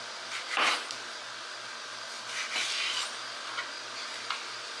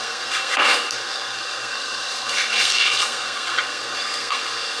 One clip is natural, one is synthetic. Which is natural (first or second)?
first